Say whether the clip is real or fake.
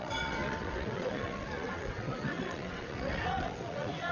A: fake